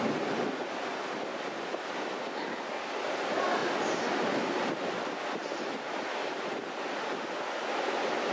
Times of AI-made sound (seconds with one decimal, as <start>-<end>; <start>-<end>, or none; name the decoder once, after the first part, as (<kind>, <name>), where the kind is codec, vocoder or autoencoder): none